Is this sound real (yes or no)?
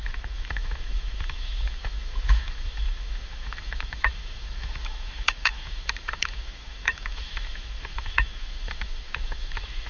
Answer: no